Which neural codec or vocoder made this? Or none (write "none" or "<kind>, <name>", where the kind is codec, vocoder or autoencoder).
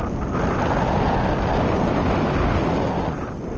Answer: none